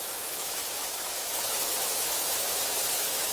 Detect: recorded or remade remade